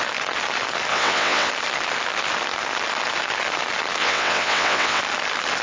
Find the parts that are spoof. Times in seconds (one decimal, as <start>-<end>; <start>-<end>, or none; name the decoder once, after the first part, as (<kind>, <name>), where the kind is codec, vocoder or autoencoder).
0.9-1.5 (vocoder, WaveNeXt); 4.0-5.0